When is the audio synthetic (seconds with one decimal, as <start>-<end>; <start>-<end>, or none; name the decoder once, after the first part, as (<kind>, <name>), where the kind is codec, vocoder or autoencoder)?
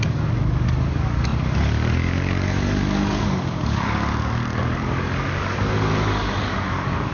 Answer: 0.0-7.1 (codec, DAC)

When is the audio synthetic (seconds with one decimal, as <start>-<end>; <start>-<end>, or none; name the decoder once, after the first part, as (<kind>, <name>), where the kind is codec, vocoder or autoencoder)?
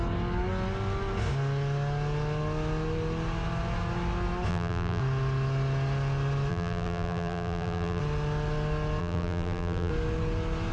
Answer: 4.5-5.0 (vocoder, BigVGAN v2); 6.5-8.0; 9.0-9.9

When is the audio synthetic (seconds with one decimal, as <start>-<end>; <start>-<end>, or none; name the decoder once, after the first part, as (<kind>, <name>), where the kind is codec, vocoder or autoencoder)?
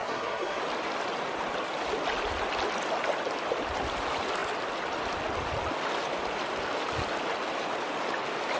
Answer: 0.0-0.6 (codec, SNAC)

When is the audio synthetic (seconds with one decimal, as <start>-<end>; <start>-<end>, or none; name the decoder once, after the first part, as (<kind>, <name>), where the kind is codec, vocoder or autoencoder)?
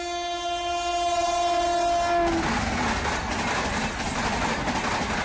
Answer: none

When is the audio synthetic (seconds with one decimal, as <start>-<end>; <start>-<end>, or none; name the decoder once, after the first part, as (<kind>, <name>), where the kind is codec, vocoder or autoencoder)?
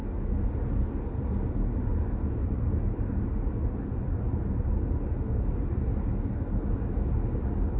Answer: none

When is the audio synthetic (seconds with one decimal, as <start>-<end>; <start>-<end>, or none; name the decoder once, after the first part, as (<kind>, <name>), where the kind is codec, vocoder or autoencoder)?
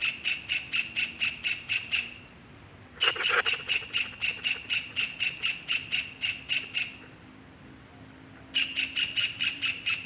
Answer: 1.5-2.9 (vocoder, BigVGAN v2); 9.2-10.1